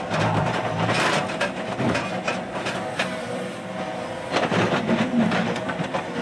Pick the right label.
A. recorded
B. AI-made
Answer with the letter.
A